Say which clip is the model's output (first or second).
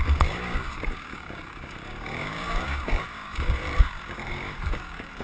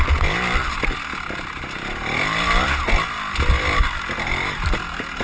first